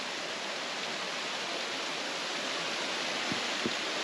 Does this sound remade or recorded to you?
recorded